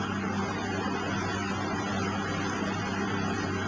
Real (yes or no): yes